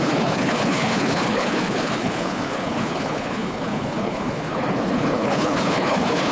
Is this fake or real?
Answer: fake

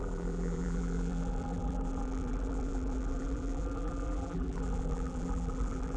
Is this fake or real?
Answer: fake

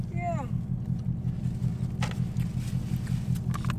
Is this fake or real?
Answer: real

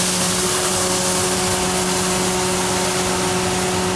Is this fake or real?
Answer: real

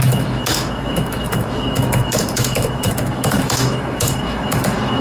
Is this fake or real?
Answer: fake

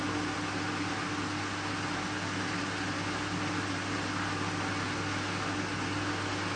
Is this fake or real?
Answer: real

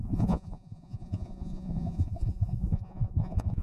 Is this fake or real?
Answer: fake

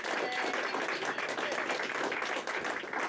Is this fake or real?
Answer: real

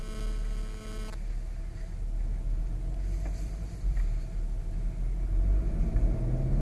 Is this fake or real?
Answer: real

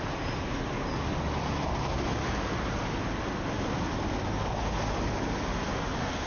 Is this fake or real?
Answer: real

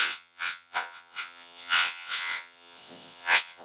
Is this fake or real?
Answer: fake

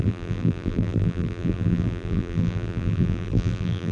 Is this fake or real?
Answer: fake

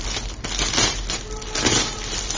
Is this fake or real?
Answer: real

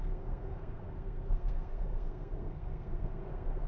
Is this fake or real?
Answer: fake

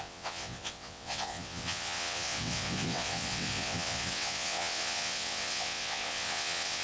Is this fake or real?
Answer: fake